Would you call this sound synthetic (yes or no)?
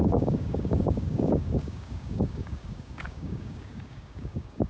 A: yes